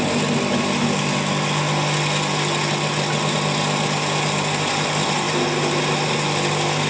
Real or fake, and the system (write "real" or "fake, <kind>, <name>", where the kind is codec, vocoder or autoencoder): real